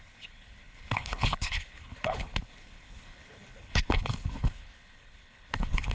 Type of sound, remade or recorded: remade